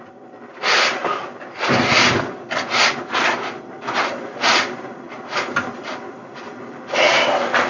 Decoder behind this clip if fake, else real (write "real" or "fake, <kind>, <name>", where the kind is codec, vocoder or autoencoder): real